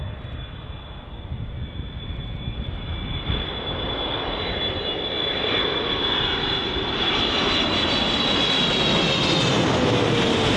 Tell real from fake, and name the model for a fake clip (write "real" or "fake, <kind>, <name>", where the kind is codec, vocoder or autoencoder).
real